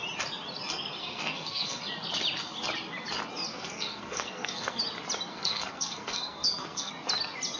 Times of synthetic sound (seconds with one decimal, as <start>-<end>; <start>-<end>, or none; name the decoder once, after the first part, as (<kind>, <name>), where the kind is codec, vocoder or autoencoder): 1.0-1.8 (codec, SNAC); 3.5-4.8; 5.3-6.9